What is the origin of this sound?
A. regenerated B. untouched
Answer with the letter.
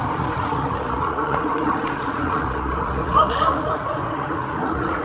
A